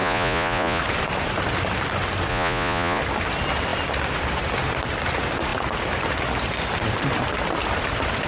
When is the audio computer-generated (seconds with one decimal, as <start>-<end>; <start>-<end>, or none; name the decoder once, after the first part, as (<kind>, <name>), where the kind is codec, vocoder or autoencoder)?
0.0-0.8 (vocoder, Vocos); 2.3-3.0